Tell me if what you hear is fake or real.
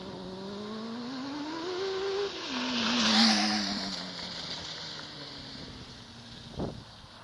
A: real